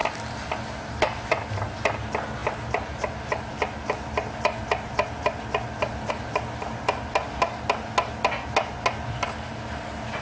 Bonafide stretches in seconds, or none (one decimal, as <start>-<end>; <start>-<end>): 0.0-10.2